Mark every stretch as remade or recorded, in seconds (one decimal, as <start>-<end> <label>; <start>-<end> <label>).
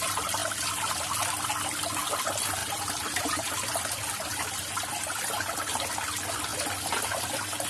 0.0-2.6 recorded; 2.6-3.5 remade; 3.5-7.7 recorded